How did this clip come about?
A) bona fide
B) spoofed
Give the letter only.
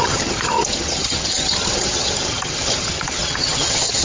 B